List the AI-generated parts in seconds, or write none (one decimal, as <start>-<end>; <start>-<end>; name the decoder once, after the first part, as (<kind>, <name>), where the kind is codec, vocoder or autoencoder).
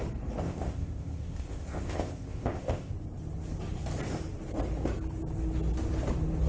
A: 0.4-2.9 (codec, ZipCodec)